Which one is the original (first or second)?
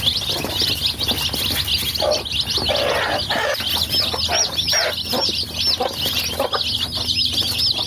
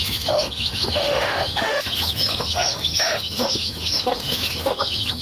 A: first